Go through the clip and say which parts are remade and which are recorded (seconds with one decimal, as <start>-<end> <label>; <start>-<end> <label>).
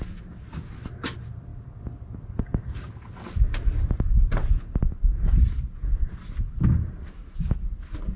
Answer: 0.0-8.2 recorded